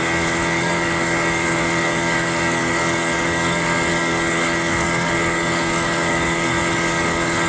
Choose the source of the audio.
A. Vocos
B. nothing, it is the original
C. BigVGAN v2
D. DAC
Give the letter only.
D